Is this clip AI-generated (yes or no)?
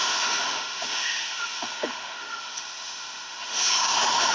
yes